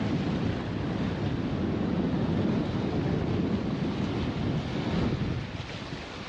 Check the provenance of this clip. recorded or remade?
recorded